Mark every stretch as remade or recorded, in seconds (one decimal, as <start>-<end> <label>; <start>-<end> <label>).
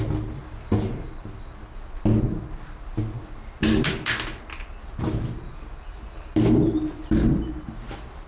0.0-8.3 recorded